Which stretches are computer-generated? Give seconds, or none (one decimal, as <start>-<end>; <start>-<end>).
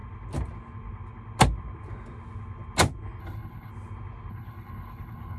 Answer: 3.2-3.7; 4.3-5.4